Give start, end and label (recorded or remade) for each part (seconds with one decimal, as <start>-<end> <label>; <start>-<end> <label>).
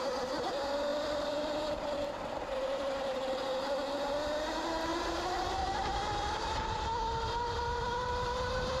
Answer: 0.0-0.9 recorded; 0.9-3.0 remade; 3.0-4.9 recorded; 4.9-8.8 remade